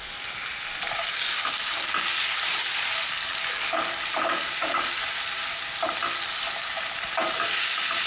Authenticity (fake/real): real